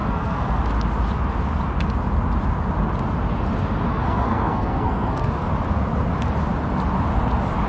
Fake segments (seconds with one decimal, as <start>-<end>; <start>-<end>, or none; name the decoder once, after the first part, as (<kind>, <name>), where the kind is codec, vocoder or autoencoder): 0.0-0.6 (codec, SNAC); 3.9-5.5